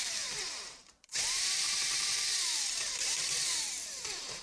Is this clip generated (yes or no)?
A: yes